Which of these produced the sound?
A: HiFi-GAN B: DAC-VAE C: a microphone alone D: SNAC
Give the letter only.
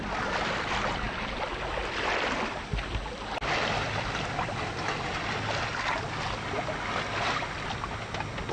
C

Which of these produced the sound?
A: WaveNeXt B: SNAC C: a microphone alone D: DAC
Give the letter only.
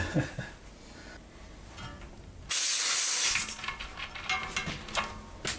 C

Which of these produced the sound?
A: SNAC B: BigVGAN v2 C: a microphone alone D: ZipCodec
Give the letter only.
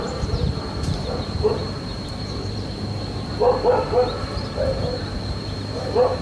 B